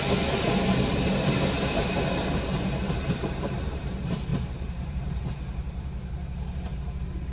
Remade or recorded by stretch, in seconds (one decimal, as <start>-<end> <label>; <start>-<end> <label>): 0.0-2.8 recorded; 2.8-3.9 remade; 3.9-4.3 recorded; 4.3-5.3 remade; 5.3-7.3 recorded